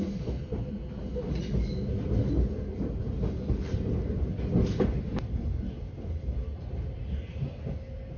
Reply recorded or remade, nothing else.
recorded